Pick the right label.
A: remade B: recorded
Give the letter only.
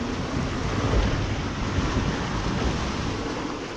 B